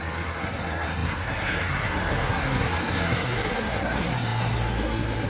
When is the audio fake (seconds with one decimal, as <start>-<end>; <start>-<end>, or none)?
0.0-5.3